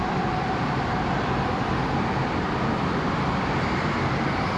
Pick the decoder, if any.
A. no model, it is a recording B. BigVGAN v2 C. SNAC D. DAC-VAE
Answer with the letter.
B